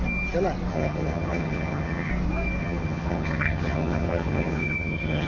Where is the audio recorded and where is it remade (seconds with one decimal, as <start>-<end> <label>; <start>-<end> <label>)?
0.0-0.7 recorded; 0.7-2.1 remade; 2.1-2.6 recorded; 2.6-5.3 remade